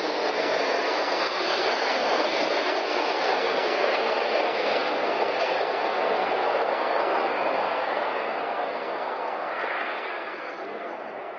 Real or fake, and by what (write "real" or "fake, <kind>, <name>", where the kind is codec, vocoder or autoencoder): fake, codec, SNAC